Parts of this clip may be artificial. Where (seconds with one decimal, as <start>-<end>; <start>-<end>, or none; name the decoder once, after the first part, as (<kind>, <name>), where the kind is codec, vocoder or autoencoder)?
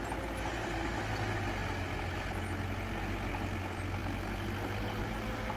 0.5-1.0 (vocoder, BigVGAN v2)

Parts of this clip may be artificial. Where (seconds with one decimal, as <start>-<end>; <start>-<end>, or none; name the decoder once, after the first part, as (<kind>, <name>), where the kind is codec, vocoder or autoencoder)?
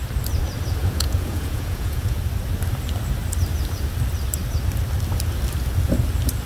0.8-2.2 (vocoder, Vocos)